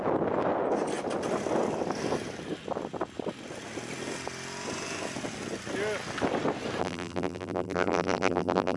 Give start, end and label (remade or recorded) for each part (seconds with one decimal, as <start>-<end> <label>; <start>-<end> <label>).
0.0-6.8 recorded; 6.8-8.8 remade